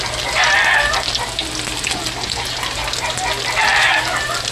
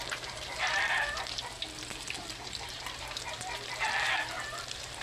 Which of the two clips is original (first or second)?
first